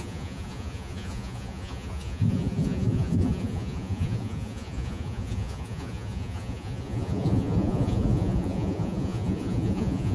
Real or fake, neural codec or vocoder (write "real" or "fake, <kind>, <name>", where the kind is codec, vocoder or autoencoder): fake, vocoder, Vocos